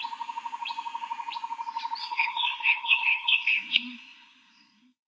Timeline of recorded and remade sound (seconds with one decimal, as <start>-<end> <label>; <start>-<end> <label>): 0.0-2.0 recorded; 2.0-5.1 remade